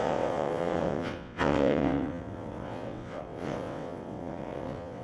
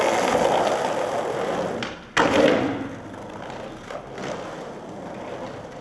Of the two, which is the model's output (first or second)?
first